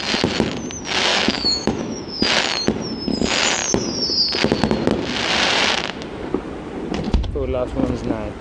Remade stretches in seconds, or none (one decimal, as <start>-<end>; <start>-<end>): 1.1-2.2

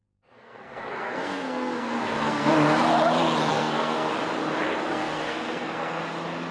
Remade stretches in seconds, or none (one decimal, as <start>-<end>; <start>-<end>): 0.0-2.5; 3.5-4.1; 4.6-6.0

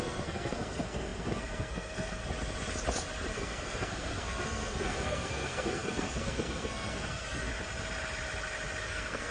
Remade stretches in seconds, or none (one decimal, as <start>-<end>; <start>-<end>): 0.0-2.2; 3.3-7.5; 8.8-9.3

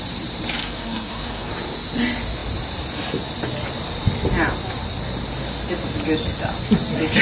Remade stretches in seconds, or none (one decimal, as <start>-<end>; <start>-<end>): 0.6-1.5